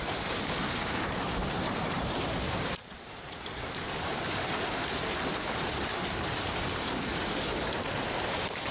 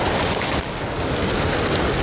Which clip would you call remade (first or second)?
first